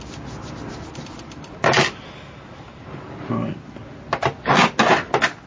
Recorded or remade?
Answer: recorded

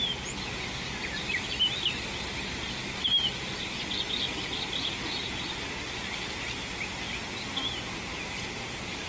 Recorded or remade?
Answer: recorded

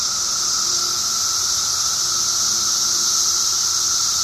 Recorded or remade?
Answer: recorded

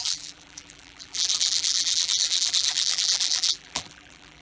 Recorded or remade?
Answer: remade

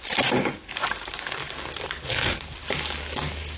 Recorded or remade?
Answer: remade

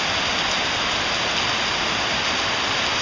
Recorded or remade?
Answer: recorded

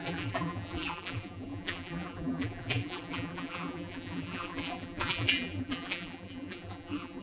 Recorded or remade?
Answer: remade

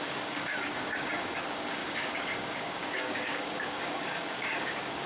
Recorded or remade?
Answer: remade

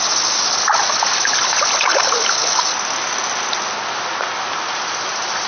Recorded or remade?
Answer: recorded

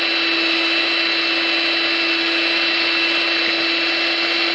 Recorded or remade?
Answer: recorded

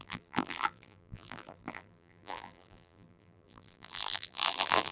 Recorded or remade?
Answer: remade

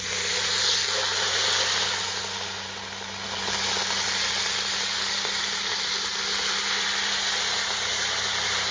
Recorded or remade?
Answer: recorded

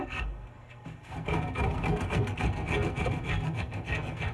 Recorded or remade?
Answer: remade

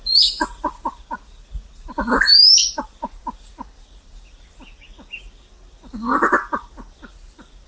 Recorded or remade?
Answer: recorded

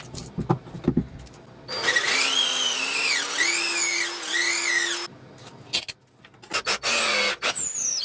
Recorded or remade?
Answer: recorded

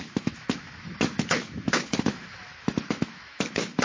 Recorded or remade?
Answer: remade